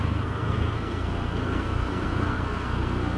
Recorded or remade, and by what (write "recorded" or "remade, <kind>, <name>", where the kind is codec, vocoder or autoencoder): remade, codec, SNAC